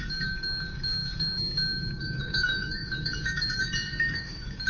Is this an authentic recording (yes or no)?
no